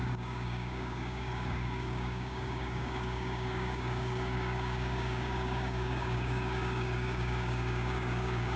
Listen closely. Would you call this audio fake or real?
fake